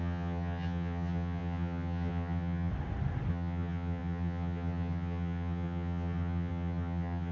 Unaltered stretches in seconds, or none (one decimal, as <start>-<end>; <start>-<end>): 2.7-3.3